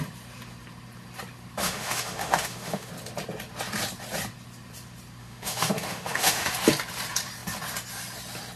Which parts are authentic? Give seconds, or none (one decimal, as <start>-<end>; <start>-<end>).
0.0-1.6; 2.9-5.2; 6.5-8.6